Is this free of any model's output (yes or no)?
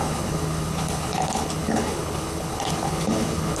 no